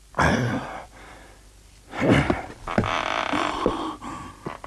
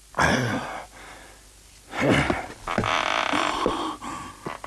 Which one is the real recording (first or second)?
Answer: second